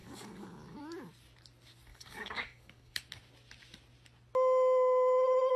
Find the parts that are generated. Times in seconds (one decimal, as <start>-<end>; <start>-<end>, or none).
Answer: 0.0-0.8; 1.9-3.0